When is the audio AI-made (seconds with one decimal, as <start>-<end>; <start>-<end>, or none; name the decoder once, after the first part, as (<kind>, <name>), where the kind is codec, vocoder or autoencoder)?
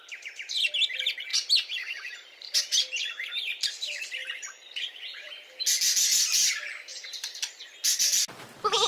1.3-3.3 (vocoder, BigVGAN v2); 4.2-5.3; 6.9-7.7